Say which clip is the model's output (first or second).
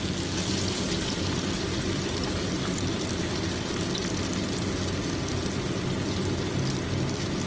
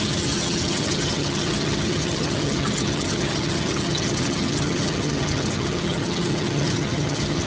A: second